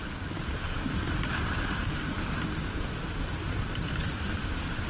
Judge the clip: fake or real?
fake